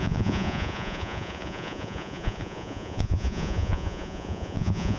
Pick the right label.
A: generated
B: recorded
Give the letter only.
A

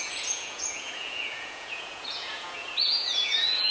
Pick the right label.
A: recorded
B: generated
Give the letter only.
B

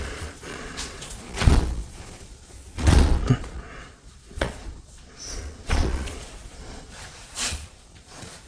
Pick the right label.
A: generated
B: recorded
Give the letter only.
A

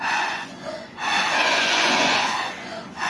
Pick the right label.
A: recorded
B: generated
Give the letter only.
B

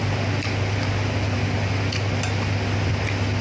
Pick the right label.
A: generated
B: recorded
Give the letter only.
B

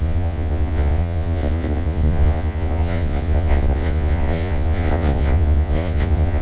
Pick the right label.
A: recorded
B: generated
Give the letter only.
B